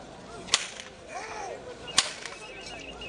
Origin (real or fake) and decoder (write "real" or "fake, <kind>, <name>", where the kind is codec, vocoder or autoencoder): real